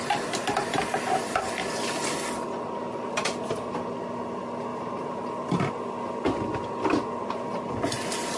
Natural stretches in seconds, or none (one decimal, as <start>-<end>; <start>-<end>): 0.0-4.7; 5.3-8.4